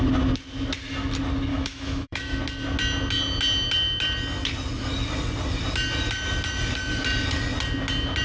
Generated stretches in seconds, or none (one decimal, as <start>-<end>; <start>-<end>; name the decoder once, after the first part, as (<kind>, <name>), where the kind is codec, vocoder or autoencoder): 1.5-2.4 (autoencoder, DAC-VAE)